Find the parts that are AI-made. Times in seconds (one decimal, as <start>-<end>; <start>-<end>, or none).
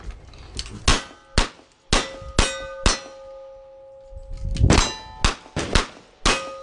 none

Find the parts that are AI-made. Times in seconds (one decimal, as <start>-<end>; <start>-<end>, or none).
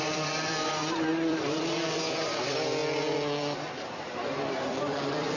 0.0-2.8; 3.7-5.4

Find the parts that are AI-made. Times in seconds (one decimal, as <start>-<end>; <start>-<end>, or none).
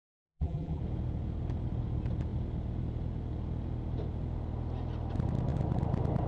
0.0-0.8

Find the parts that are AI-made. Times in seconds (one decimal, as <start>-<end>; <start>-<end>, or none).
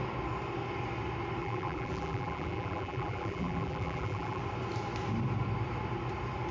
1.4-4.4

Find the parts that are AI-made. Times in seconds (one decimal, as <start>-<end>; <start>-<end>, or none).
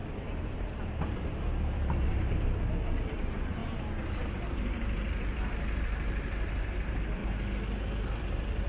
0.0-3.6; 4.3-7.2; 8.2-8.7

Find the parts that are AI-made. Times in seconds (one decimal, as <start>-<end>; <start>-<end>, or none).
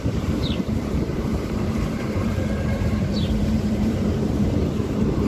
0.0-5.3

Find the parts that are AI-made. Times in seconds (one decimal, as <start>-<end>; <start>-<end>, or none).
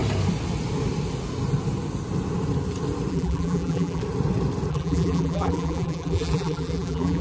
3.1-4.0; 4.7-7.2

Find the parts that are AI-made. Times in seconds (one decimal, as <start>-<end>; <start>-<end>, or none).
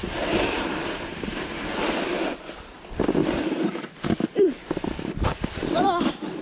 3.2-6.0